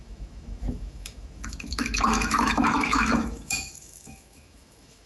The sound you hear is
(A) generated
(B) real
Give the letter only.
A